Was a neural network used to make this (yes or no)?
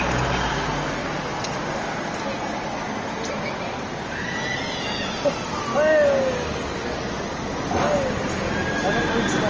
no